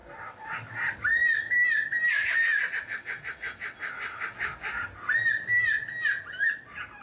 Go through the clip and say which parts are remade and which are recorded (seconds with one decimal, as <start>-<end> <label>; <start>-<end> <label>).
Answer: 0.0-7.0 recorded